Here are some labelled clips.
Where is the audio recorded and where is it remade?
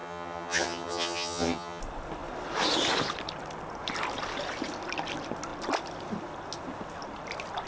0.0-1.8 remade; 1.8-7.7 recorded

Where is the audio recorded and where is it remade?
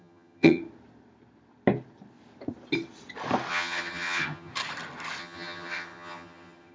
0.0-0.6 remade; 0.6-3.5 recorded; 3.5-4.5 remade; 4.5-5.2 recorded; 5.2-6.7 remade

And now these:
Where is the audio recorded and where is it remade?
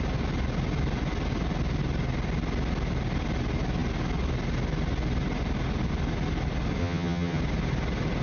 0.0-6.8 recorded; 6.8-7.4 remade; 7.4-8.2 recorded